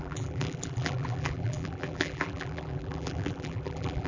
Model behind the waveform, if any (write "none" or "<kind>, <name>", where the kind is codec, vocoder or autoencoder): vocoder, BigVGAN v2